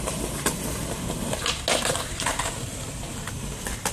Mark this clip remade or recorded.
recorded